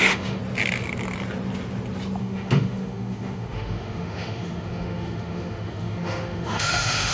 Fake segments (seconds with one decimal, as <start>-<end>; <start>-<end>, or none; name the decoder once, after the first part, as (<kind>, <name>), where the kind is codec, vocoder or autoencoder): 0.0-0.4 (autoencoder, DAC-VAE); 2.2-7.1